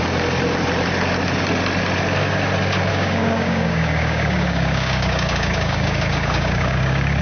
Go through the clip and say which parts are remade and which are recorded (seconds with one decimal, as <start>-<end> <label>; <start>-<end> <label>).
0.0-2.9 recorded; 2.9-7.2 remade